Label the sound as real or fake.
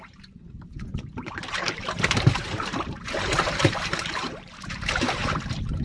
fake